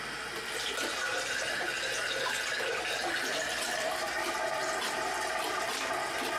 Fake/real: real